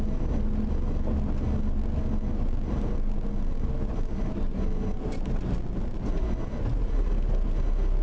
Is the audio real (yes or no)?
yes